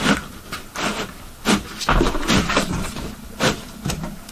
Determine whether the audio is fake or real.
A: real